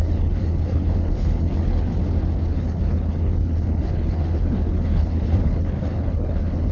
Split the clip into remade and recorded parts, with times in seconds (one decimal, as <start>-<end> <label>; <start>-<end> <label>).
0.0-1.9 remade; 1.9-2.5 recorded; 2.5-6.7 remade